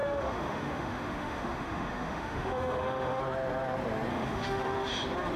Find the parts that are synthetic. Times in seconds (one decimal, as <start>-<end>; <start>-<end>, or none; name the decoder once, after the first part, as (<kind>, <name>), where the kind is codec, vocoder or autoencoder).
0.0-3.2 (autoencoder, DAC-VAE); 4.1-4.9